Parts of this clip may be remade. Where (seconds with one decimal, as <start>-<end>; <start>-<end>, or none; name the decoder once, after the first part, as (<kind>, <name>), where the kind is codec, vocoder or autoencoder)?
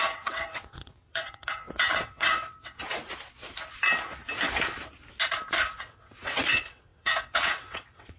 0.0-3.0 (vocoder, WaveNeXt); 5.7-8.2